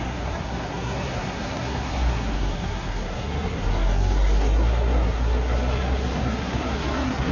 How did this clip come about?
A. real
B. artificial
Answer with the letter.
B